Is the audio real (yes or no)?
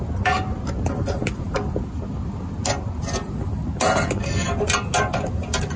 yes